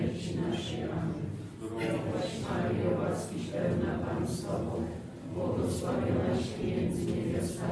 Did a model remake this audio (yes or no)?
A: no